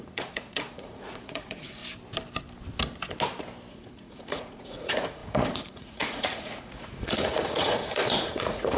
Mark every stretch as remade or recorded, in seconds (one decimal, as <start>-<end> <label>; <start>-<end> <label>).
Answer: 0.0-1.8 remade; 1.8-3.7 recorded; 3.7-8.8 remade